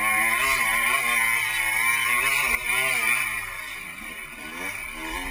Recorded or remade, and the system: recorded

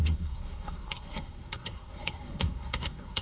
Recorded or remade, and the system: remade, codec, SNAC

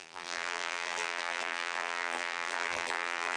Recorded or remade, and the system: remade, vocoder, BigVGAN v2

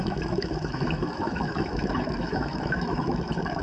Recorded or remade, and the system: remade, autoencoder, DAC-VAE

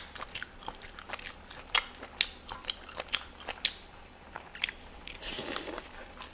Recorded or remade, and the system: recorded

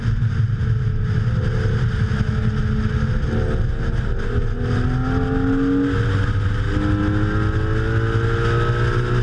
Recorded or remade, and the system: recorded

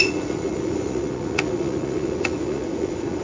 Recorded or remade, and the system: remade, vocoder, Vocos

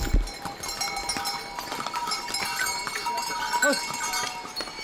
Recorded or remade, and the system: recorded